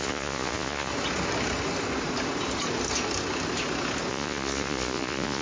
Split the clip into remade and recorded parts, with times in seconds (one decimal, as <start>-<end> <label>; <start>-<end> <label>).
0.0-0.9 remade; 0.9-4.1 recorded; 4.1-5.4 remade